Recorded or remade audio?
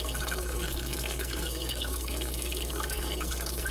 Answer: remade